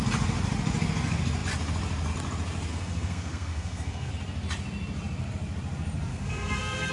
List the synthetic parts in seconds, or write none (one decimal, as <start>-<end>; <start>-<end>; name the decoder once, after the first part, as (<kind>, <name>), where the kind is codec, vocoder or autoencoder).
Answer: 2.7-4.1 (codec, SNAC); 6.1-6.9